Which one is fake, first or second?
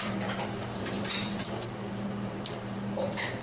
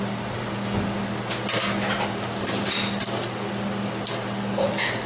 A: first